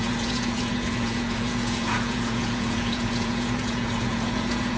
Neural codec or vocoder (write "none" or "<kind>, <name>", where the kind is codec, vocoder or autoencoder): vocoder, Vocos